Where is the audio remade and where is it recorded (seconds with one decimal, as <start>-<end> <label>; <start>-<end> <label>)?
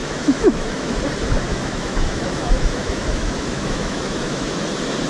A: 0.0-1.0 remade; 1.0-1.5 recorded; 1.5-4.6 remade; 4.6-5.1 recorded